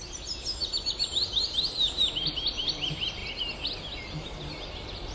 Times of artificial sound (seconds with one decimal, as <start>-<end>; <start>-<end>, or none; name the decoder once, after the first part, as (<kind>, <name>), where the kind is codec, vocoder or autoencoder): none